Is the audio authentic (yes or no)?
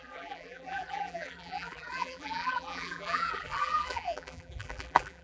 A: no